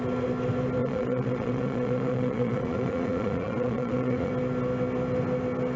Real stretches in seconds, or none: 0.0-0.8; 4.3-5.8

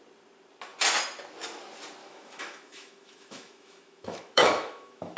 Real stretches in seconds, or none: 0.0-2.0

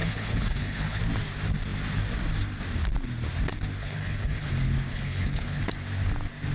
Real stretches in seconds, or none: 1.0-3.8; 4.5-4.9; 5.6-6.5

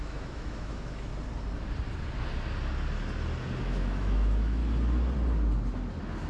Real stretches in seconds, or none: 1.1-3.6; 4.6-6.3

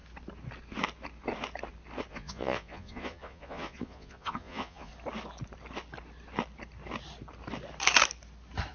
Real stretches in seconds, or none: 0.0-2.1; 4.9-8.7

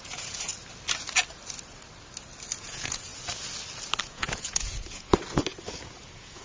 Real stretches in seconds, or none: 0.5-2.6; 3.1-4.0; 5.1-6.0

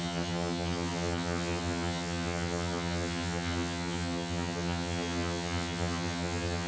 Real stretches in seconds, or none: none

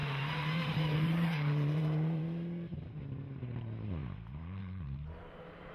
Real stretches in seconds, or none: 4.0-4.6